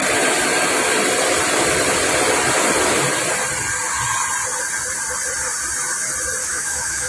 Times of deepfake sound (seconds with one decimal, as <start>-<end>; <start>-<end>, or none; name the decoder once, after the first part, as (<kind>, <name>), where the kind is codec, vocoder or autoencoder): 6.4-7.1 (autoencoder, DAC-VAE)